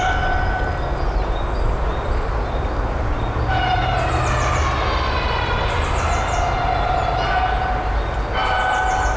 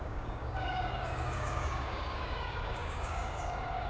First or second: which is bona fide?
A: first